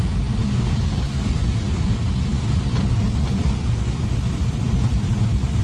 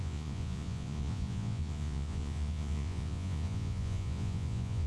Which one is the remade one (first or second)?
second